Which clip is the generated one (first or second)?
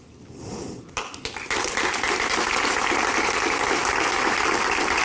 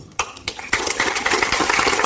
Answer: second